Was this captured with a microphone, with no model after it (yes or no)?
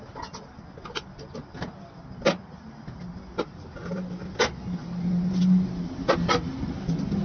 yes